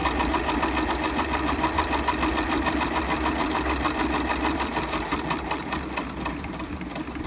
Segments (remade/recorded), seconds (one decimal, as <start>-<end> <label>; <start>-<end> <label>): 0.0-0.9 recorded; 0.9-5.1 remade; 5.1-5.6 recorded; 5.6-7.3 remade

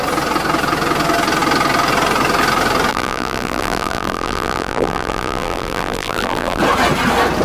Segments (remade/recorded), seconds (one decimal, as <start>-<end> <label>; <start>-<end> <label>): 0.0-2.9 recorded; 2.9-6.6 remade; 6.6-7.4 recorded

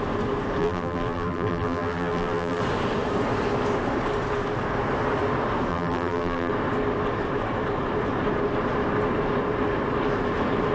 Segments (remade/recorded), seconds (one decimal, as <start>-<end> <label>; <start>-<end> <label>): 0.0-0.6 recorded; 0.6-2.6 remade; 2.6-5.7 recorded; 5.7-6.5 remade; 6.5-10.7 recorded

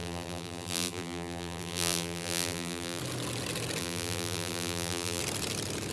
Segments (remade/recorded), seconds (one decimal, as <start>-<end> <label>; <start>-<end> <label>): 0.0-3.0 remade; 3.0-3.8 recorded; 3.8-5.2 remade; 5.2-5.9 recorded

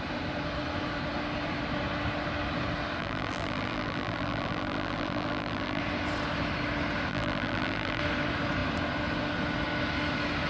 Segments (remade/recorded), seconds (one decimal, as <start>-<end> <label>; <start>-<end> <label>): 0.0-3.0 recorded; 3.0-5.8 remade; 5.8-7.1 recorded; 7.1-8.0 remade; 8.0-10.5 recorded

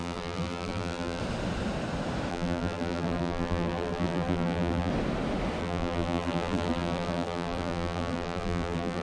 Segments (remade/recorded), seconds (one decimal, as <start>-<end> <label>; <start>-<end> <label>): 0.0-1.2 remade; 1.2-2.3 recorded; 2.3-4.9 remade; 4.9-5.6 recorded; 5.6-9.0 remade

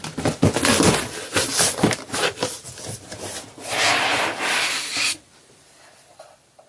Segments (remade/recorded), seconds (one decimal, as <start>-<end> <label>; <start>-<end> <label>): 0.0-0.9 recorded; 0.9-6.7 remade

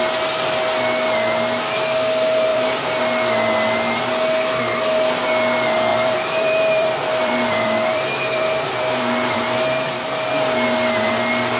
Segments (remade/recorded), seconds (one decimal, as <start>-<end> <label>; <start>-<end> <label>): 0.0-2.5 recorded; 2.5-3.0 remade; 3.0-5.9 recorded; 5.9-10.3 remade; 10.3-11.6 recorded